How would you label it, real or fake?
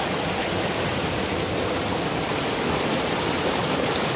real